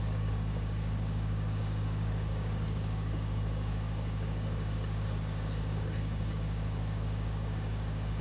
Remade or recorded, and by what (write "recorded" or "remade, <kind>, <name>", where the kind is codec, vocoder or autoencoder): remade, codec, DAC